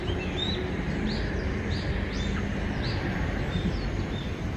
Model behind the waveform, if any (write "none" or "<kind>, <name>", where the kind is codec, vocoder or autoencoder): none